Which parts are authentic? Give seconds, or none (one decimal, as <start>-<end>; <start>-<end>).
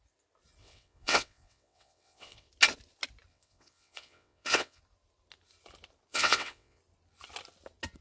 0.0-0.6; 2.5-3.3; 4.8-6.1; 6.8-8.0